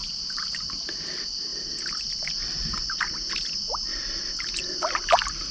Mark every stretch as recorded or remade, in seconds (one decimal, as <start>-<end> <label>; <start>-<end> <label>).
0.0-5.5 recorded